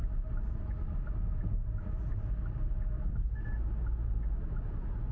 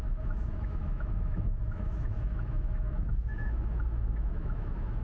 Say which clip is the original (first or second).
first